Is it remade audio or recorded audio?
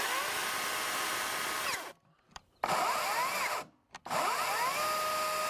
recorded